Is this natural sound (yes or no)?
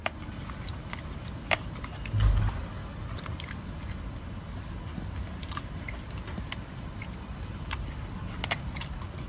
yes